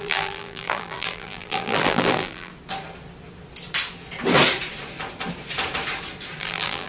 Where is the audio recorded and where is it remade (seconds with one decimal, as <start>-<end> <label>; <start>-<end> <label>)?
0.0-2.5 remade; 2.5-6.4 recorded; 6.4-6.9 remade